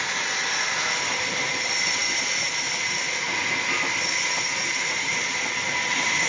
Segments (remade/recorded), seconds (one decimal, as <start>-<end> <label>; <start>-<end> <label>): 0.0-6.3 recorded